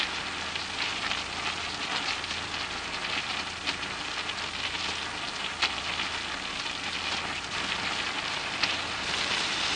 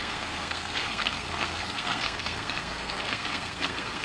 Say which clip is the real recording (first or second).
first